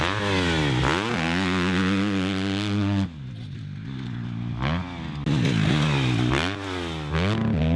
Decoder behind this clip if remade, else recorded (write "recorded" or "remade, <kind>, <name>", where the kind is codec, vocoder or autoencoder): recorded